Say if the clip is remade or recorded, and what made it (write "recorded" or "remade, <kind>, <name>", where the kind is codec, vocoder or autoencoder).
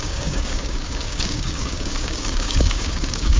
remade, codec, DAC